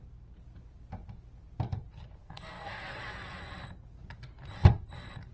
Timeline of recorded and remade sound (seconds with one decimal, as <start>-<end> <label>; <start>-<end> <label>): 0.0-2.2 recorded; 2.2-3.0 remade; 3.0-5.3 recorded

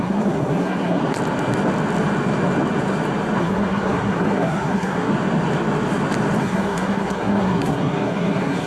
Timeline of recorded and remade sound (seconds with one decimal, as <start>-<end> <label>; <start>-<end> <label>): 0.0-1.0 remade; 1.0-3.4 recorded; 3.4-5.1 remade; 5.1-6.4 recorded; 6.4-8.7 remade

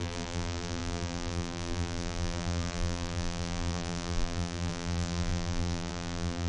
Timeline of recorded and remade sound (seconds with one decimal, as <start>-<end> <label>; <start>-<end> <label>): 0.0-6.5 remade

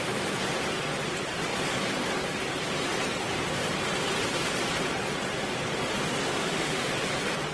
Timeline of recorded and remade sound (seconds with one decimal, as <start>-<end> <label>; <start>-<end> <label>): 0.0-6.3 recorded; 6.3-6.9 remade; 6.9-7.5 recorded

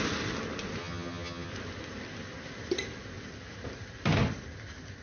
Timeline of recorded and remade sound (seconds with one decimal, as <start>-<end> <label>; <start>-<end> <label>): 0.0-0.8 recorded; 0.8-1.5 remade; 1.5-5.0 recorded

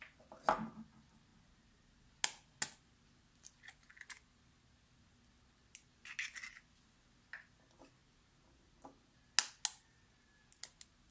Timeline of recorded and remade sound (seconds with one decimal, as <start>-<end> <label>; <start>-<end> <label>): 0.0-11.1 recorded

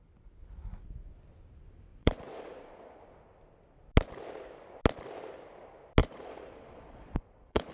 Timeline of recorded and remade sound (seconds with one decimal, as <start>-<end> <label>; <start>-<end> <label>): 0.0-1.9 recorded; 1.9-3.0 remade; 3.0-6.0 recorded; 6.0-7.7 remade